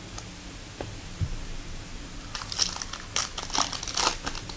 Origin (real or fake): real